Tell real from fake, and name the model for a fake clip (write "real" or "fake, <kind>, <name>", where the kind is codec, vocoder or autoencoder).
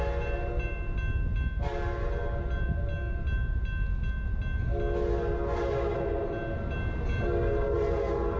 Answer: real